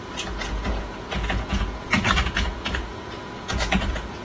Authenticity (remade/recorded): remade